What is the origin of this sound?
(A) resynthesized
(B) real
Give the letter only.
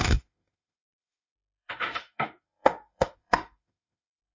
A